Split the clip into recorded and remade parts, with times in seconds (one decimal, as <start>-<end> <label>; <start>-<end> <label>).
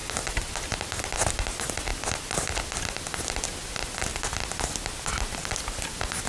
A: 0.0-1.0 remade; 1.0-6.3 recorded